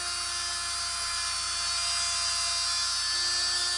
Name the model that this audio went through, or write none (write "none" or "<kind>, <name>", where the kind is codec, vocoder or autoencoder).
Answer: none